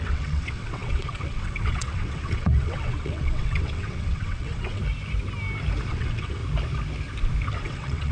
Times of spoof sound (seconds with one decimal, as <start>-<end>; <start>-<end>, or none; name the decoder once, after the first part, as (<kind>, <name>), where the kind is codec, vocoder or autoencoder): 0.0-4.8 (vocoder, WaveNeXt); 5.9-6.4; 7.6-8.1